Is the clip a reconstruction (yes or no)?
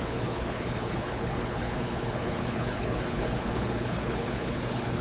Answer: yes